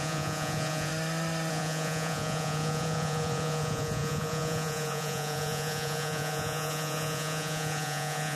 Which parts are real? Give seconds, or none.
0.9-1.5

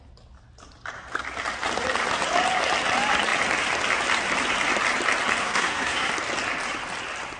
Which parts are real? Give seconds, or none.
0.0-5.4; 6.1-7.4

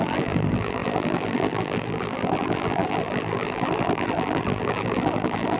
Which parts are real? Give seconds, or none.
none